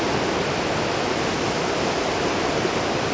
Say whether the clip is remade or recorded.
recorded